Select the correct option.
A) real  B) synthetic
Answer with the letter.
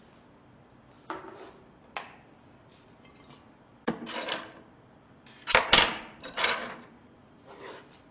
A